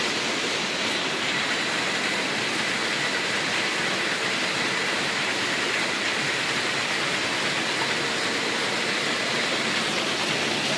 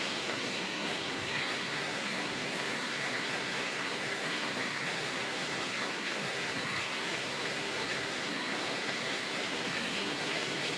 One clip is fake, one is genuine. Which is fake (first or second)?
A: second